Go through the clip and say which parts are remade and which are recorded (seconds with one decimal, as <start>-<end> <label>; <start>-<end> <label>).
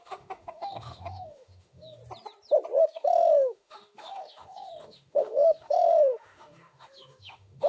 0.0-2.0 remade; 2.0-2.8 recorded; 2.8-7.7 remade